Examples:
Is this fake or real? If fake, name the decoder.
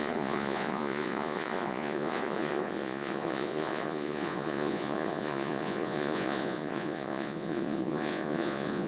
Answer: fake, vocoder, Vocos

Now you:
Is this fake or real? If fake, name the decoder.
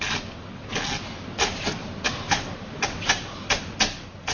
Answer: real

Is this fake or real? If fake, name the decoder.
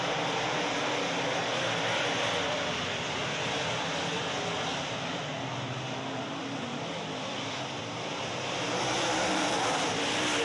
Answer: real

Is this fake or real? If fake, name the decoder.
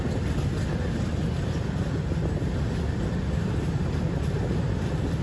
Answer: real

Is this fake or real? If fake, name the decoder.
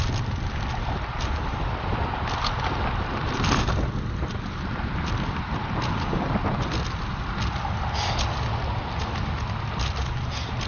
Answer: real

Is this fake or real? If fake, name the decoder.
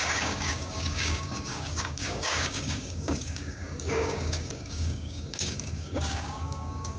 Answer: fake, codec, DAC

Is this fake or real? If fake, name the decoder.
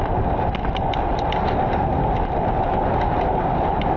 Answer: real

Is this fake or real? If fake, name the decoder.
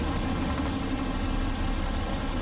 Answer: real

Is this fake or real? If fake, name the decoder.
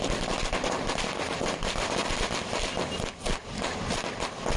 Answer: real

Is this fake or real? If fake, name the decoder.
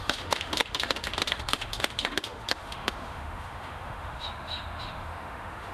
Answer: fake, autoencoder, DAC-VAE